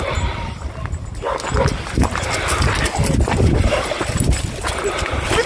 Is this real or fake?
real